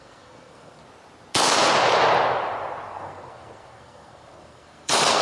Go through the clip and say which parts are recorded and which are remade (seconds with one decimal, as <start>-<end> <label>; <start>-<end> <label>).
0.0-0.8 remade; 0.8-2.9 recorded; 2.9-5.2 remade